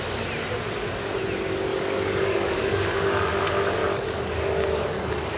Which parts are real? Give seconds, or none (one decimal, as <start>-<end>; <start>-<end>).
0.0-1.7; 3.4-3.8